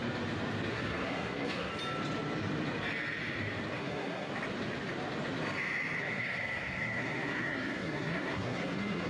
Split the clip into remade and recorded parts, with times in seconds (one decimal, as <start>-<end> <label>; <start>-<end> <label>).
0.0-0.7 recorded; 0.7-1.7 remade; 1.7-3.8 recorded; 3.8-4.3 remade; 4.3-6.0 recorded; 6.0-9.1 remade